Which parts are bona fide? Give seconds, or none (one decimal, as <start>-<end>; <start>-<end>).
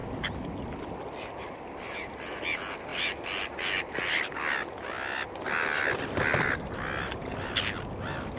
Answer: 0.0-8.4